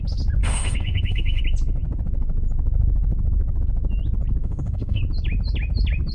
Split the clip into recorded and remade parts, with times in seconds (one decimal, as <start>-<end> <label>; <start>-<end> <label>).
0.0-0.4 recorded; 0.4-1.4 remade; 1.4-4.4 recorded; 4.4-5.0 remade; 5.0-6.1 recorded